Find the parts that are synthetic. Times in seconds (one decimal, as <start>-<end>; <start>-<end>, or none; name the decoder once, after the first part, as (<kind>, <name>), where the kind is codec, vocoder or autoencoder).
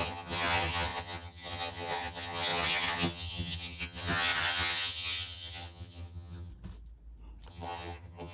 0.0-6.5 (vocoder, HiFi-GAN); 7.5-8.3